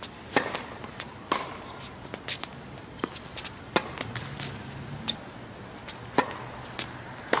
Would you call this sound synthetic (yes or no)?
no